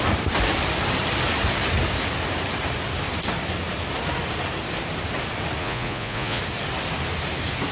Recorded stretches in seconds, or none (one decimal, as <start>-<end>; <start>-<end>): 0.0-5.6; 6.4-7.7